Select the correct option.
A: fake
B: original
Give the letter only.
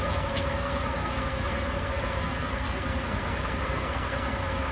A